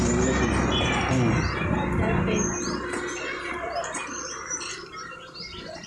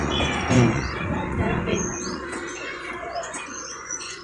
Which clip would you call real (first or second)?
first